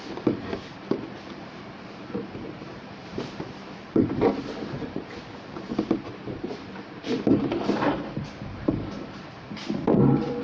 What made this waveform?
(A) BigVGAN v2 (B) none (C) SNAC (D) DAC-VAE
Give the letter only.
A